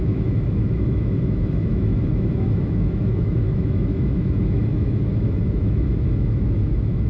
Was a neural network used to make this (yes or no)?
yes